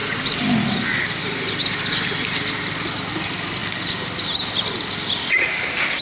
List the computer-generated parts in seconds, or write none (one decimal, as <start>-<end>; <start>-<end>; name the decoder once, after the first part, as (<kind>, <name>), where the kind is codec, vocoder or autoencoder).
none